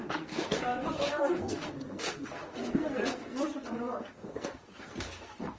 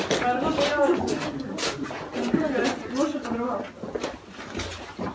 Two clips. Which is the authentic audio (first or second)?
second